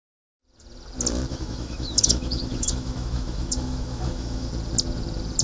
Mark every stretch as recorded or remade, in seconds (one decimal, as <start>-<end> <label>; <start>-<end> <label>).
0.0-1.3 recorded; 1.3-4.5 remade; 4.5-5.4 recorded